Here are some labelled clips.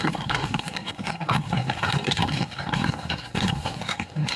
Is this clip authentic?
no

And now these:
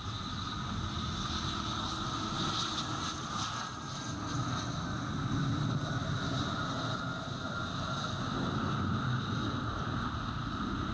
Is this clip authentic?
yes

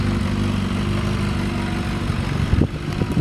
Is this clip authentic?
yes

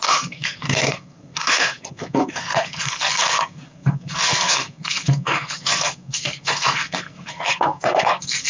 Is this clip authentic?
no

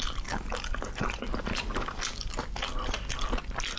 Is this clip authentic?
yes